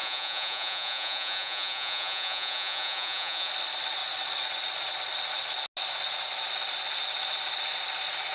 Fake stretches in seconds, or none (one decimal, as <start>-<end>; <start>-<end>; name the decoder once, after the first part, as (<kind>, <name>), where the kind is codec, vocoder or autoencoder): 0.0-3.5 (vocoder, Vocos)